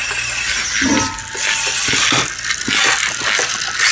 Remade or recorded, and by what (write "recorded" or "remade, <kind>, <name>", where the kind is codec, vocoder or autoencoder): recorded